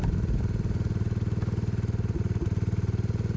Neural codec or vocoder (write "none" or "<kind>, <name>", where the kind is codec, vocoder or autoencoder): none